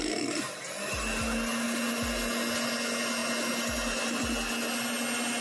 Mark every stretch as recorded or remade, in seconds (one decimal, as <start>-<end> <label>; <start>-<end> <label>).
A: 0.0-5.4 recorded